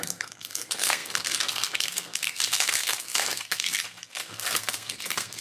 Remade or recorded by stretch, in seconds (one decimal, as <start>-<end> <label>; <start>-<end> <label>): 0.0-5.4 remade